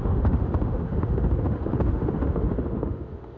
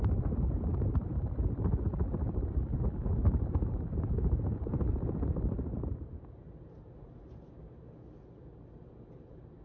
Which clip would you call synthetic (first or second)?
first